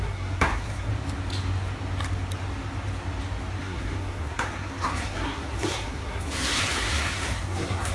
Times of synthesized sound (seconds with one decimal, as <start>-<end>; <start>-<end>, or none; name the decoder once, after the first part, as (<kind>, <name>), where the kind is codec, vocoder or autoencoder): 0.0-0.9 (codec, SNAC); 3.6-7.9